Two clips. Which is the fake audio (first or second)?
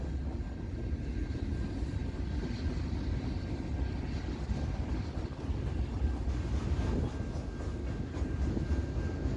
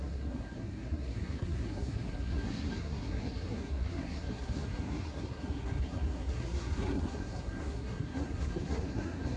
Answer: second